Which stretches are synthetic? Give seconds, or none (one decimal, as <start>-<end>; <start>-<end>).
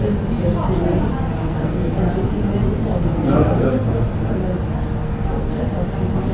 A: 1.4-2.0; 3.0-4.4; 5.0-5.6